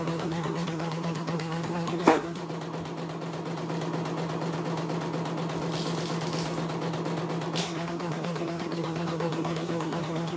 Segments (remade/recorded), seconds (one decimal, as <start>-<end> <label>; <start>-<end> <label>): 0.0-2.4 remade; 2.4-7.6 recorded; 7.6-10.4 remade